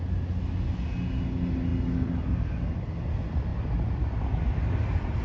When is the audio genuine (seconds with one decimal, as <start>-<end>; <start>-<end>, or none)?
0.0-5.2